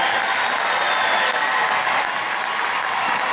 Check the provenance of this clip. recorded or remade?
recorded